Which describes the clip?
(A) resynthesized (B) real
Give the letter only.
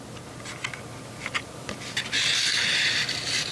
B